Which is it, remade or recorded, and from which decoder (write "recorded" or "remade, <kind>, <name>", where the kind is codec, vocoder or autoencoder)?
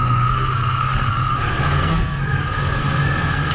remade, codec, SNAC